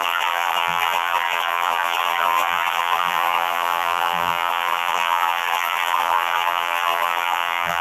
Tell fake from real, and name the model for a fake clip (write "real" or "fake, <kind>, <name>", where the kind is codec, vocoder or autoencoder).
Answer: fake, vocoder, BigVGAN v2